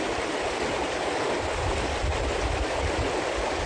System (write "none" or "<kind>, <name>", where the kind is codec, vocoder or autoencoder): none